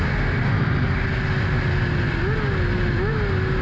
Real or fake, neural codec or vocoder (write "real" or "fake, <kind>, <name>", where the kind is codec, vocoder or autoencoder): real